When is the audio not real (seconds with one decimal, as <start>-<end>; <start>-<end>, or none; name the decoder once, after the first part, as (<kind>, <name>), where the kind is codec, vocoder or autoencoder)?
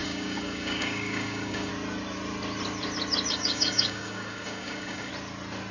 0.0-1.7 (codec, DAC); 3.3-5.1